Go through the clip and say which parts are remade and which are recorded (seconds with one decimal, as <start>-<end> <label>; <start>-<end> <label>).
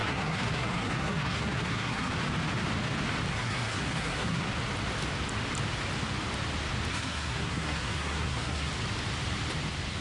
0.0-2.1 remade; 2.1-3.3 recorded; 3.3-4.4 remade; 4.4-6.9 recorded; 6.9-8.7 remade; 8.7-10.0 recorded